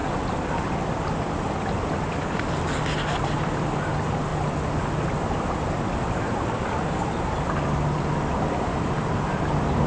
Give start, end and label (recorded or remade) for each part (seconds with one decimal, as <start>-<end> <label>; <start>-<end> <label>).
0.0-9.9 recorded